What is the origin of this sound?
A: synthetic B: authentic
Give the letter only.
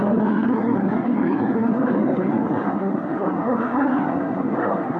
A